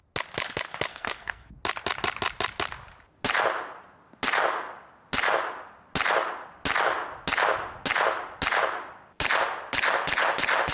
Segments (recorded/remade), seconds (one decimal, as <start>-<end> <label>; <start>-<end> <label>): 0.0-0.9 recorded; 0.9-1.6 remade; 1.6-10.7 recorded